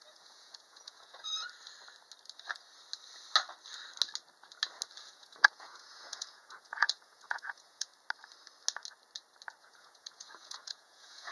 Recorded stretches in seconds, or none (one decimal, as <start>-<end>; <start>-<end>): 1.3-5.0; 7.9-9.6